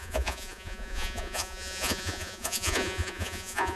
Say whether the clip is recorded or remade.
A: remade